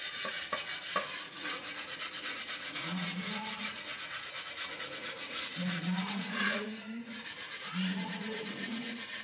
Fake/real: fake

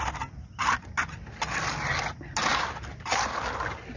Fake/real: real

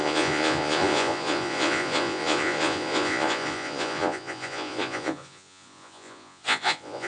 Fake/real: fake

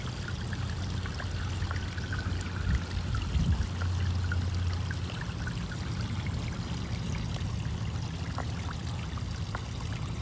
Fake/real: real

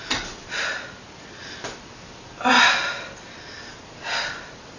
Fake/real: real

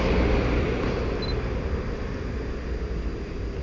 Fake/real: real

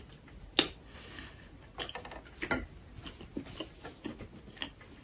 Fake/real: real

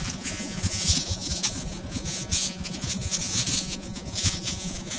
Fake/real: fake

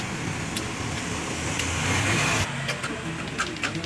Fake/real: real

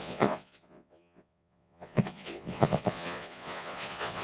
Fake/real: fake